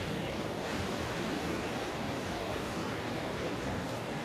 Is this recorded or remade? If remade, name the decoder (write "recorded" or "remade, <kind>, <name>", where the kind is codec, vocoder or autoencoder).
remade, codec, DAC